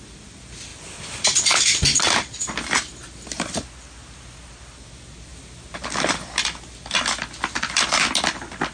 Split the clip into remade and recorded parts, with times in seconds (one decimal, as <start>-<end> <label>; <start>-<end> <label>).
0.0-8.7 recorded

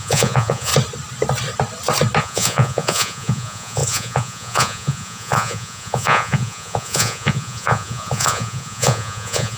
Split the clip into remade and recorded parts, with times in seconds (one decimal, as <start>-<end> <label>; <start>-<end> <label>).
0.0-0.7 remade; 0.7-2.2 recorded; 2.2-9.6 remade

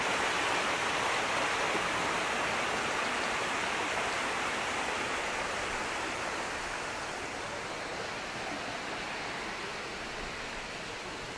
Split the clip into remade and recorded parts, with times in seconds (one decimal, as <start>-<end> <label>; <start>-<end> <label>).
0.0-11.4 recorded